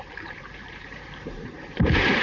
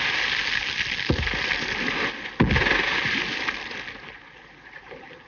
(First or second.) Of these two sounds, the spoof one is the first